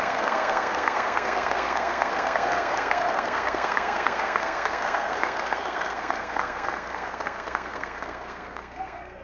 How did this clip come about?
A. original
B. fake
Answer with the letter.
B